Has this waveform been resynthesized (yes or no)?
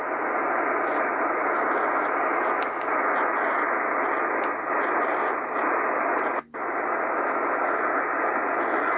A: no